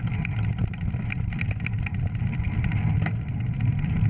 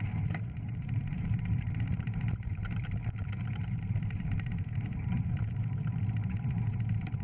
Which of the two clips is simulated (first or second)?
second